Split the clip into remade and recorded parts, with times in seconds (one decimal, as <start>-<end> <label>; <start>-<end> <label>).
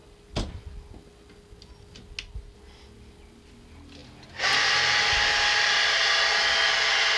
0.0-7.2 recorded